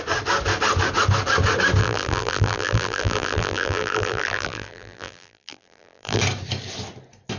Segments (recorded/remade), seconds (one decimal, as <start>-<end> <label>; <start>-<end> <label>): 0.0-1.8 recorded; 1.8-6.2 remade; 6.2-7.4 recorded